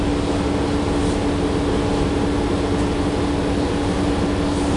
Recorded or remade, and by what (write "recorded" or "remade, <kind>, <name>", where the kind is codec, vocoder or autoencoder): recorded